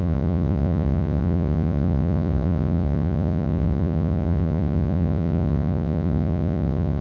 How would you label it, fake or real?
fake